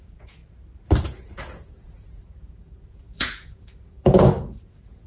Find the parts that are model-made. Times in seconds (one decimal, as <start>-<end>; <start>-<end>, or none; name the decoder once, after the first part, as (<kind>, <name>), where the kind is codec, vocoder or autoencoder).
0.0-0.4 (vocoder, Vocos); 1.0-5.1